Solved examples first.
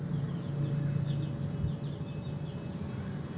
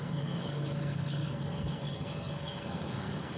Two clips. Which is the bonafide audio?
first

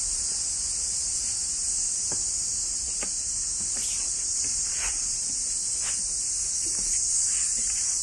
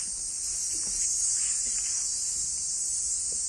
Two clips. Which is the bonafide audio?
second